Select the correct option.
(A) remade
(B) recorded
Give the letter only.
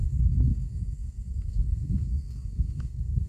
A